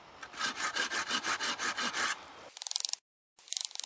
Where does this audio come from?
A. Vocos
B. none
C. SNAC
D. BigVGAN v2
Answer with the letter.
B